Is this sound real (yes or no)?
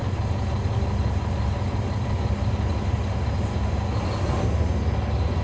yes